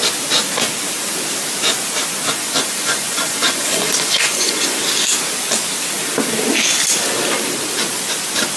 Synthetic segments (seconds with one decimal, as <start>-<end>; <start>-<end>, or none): 2.3-4.8